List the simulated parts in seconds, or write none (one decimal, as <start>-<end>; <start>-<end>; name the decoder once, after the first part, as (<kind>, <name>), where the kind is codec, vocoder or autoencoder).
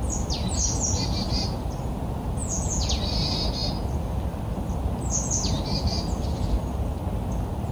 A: 2.4-2.9 (vocoder, Vocos)